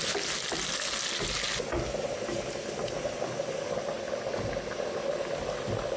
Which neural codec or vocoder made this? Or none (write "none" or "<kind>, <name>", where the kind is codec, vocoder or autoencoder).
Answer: none